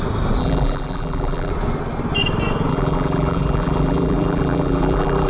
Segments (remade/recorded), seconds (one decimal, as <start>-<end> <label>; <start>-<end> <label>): 0.0-0.4 recorded; 0.4-1.5 remade; 1.5-2.7 recorded; 2.7-5.3 remade